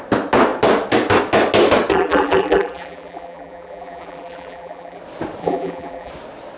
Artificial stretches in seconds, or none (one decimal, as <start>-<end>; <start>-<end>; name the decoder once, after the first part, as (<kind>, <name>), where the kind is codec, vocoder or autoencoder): 1.9-5.0 (vocoder, BigVGAN v2); 5.4-6.1

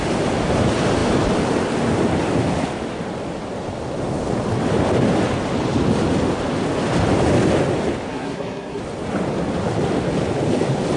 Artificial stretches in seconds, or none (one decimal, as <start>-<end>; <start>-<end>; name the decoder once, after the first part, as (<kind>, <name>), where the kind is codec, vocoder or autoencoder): 8.1-8.8 (codec, SNAC)

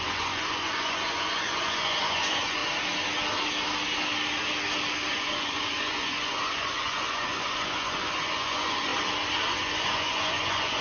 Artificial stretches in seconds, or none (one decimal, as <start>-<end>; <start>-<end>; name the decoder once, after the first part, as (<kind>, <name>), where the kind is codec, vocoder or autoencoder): 0.0-2.6 (vocoder, Vocos); 5.1-8.9; 9.5-10.8